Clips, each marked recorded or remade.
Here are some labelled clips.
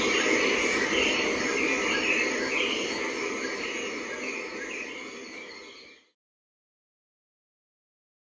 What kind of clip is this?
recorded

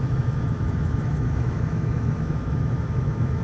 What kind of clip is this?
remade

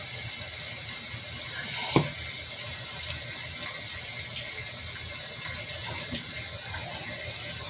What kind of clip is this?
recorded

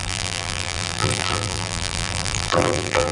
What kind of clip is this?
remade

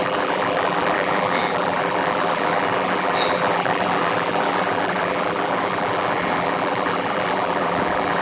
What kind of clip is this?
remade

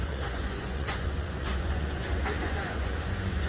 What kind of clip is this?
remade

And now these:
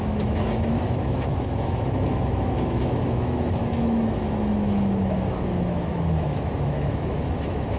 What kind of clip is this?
remade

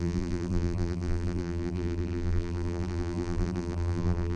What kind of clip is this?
remade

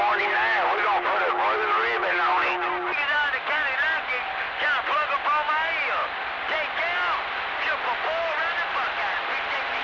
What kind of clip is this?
recorded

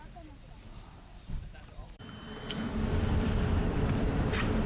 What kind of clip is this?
remade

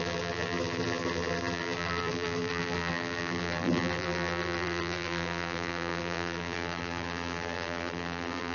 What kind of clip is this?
remade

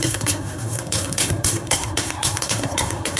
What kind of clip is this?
remade